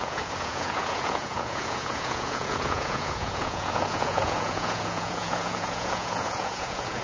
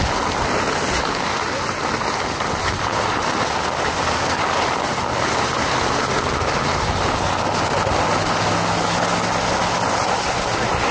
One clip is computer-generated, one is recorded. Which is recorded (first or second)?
second